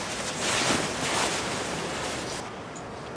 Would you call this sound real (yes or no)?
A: yes